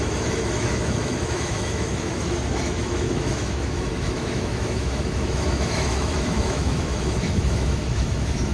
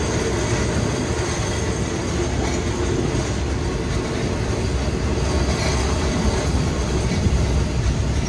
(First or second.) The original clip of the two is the second